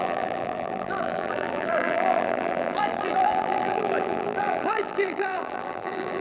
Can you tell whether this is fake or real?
fake